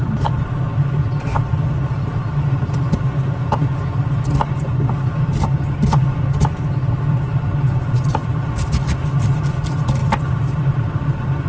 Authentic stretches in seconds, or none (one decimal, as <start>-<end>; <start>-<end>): 0.0-10.0; 10.6-11.5